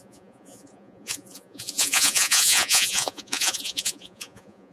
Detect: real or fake fake